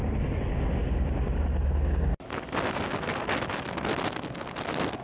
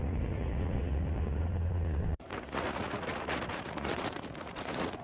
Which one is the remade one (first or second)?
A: second